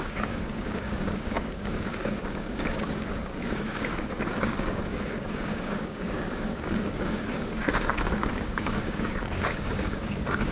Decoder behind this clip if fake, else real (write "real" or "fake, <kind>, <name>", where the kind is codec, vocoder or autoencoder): fake, codec, DAC